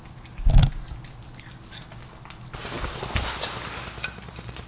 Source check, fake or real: real